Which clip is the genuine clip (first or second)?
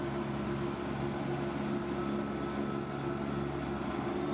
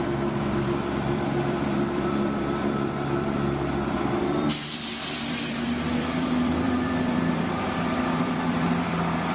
first